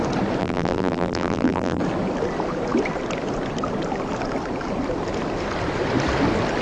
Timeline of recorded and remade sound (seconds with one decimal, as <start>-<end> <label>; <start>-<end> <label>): 0.0-0.4 recorded; 0.4-1.8 remade; 1.8-6.6 recorded